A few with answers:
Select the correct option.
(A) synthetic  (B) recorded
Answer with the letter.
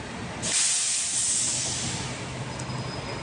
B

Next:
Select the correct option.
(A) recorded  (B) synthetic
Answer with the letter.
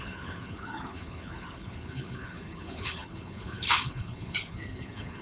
B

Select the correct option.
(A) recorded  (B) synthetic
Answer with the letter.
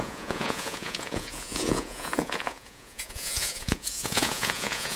B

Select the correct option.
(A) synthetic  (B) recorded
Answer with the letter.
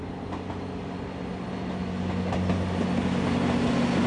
B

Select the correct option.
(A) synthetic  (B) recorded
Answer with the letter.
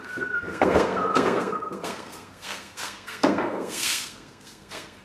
A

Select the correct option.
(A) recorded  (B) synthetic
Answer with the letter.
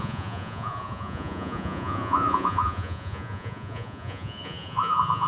B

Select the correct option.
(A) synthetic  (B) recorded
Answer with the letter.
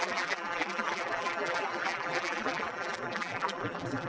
A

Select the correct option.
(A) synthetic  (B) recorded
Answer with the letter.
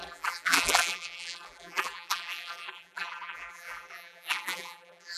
A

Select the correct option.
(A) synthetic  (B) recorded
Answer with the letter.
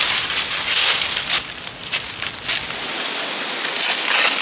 B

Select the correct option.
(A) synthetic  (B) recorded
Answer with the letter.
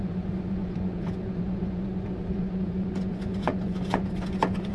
A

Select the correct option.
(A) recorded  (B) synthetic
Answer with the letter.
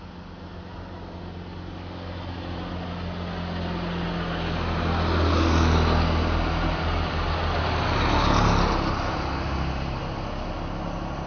A